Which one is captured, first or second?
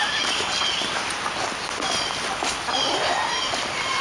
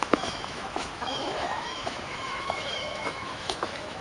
first